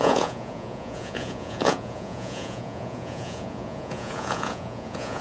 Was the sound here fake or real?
fake